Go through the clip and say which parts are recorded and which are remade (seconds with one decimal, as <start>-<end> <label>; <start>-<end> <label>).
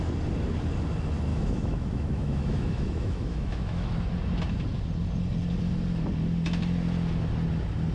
0.0-1.3 recorded; 1.3-3.9 remade; 3.9-7.9 recorded